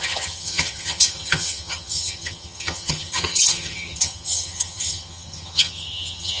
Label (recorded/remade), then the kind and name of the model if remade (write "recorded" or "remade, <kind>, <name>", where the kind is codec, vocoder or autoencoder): remade, vocoder, HiFi-GAN